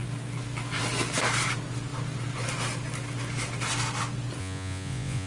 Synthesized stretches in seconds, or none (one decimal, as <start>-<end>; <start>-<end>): 4.4-5.3